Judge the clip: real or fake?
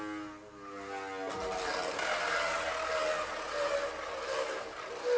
real